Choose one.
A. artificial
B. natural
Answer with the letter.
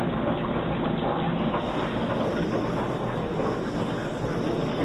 B